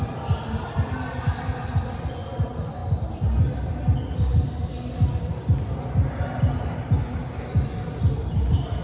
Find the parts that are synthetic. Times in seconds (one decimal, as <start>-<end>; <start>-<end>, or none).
none